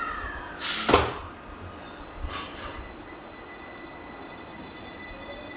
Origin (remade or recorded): recorded